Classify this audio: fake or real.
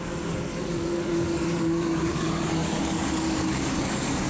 fake